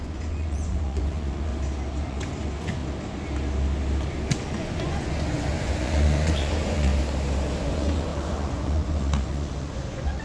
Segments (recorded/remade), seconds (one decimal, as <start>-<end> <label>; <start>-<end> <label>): 0.0-1.5 remade; 1.5-2.0 recorded; 2.0-2.8 remade; 2.8-4.5 recorded; 4.5-6.9 remade; 6.9-7.6 recorded; 7.6-10.2 remade